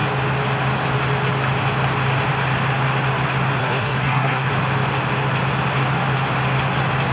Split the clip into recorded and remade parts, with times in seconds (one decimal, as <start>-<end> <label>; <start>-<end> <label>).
0.0-3.6 recorded; 3.6-4.5 remade; 4.5-7.1 recorded